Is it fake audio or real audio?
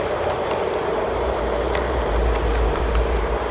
fake